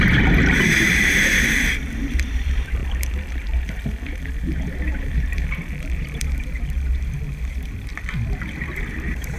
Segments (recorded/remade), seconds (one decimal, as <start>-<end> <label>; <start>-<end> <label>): 0.0-7.9 remade; 7.9-8.6 recorded; 8.6-9.4 remade